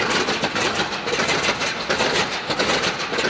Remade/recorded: recorded